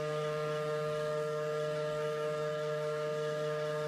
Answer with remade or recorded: remade